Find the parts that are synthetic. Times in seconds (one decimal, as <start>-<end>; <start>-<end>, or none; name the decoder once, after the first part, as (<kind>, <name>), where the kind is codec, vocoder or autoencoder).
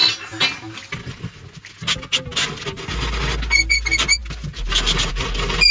none